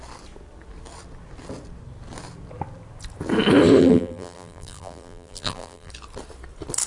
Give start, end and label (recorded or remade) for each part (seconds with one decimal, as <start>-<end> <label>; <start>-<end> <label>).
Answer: 0.0-3.8 recorded; 3.8-5.9 remade; 5.9-6.9 recorded